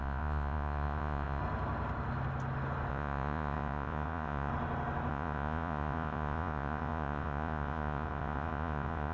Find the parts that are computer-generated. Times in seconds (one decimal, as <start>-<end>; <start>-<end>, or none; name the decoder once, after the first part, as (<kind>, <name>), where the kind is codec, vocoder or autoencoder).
0.0-1.4 (vocoder, Vocos); 2.9-4.5; 5.1-9.1

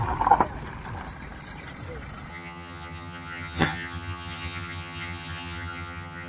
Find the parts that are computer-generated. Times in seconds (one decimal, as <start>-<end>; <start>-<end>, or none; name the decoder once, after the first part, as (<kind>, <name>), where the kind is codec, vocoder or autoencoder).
2.3-6.3 (vocoder, HiFi-GAN)

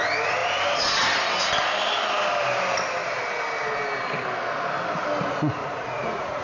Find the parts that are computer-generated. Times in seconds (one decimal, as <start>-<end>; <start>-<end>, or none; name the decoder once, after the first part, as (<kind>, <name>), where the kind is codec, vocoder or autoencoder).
5.6-6.4 (vocoder, Vocos)

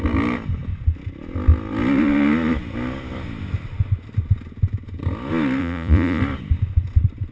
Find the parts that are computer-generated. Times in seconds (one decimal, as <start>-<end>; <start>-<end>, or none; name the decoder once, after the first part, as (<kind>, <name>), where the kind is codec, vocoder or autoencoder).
5.6-6.2 (vocoder, Vocos)

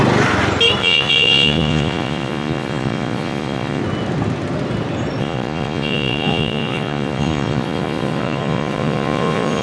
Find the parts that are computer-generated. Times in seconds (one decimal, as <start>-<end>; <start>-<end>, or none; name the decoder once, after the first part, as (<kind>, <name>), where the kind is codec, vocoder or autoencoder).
0.8-3.8 (vocoder, Vocos); 5.2-9.6

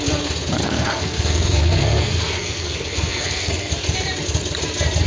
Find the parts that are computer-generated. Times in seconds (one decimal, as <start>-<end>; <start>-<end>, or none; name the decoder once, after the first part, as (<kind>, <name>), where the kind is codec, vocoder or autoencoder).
0.6-3.7 (codec, SNAC)